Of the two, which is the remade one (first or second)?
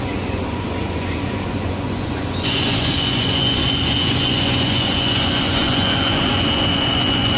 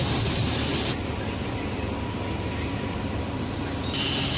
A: first